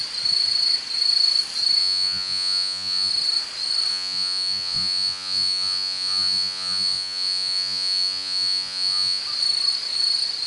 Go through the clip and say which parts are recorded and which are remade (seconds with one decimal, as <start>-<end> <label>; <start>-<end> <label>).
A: 0.0-1.8 recorded; 1.8-3.1 remade; 3.1-3.9 recorded; 3.9-9.2 remade; 9.2-10.5 recorded